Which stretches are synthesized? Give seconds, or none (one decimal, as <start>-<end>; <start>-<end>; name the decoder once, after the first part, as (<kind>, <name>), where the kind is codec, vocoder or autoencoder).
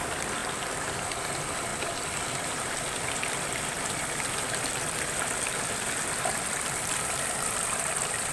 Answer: 0.0-1.7 (vocoder, BigVGAN v2); 2.4-8.3